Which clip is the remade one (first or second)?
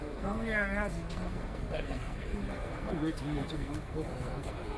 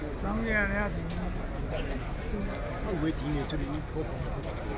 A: first